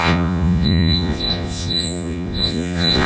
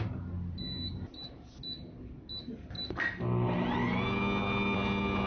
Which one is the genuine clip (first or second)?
second